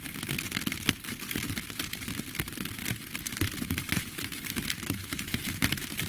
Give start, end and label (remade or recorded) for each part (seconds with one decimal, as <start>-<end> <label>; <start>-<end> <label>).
0.0-3.3 recorded; 3.3-6.1 remade